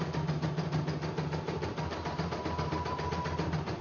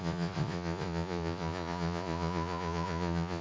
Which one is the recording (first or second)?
first